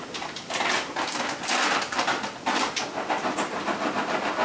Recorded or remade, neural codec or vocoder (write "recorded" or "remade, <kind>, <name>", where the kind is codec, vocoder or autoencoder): recorded